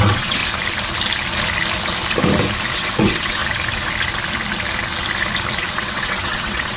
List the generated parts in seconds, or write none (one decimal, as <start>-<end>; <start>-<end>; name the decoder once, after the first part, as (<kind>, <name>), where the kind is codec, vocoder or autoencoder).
0.0-0.4 (vocoder, WaveNeXt); 2.7-3.4; 5.6-6.8

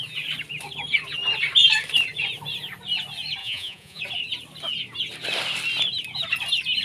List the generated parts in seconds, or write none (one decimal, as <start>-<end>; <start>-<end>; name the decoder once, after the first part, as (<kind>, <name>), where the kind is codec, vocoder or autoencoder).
3.4-4.0 (vocoder, Vocos)

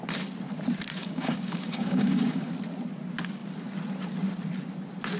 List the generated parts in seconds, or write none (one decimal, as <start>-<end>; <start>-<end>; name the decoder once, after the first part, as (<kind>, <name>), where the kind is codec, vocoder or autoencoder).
1.0-2.5 (codec, DAC)

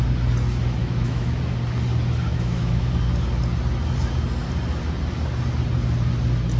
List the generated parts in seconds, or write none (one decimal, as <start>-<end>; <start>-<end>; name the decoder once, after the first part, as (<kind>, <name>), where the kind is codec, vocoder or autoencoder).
0.8-1.4 (autoencoder, DAC-VAE); 2.3-2.9